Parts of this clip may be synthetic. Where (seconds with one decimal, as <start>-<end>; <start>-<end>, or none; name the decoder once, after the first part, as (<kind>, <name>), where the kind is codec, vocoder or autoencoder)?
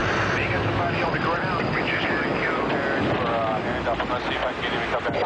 none